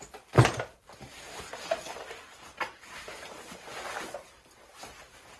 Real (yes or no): yes